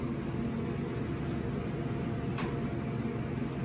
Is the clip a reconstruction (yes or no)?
no